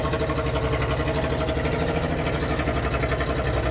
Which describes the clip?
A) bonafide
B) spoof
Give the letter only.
A